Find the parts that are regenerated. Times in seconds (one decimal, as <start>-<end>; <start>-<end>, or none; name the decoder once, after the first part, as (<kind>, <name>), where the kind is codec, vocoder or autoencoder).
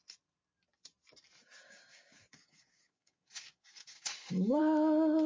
1.4-4.6 (codec, DAC)